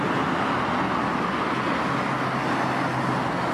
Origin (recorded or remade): recorded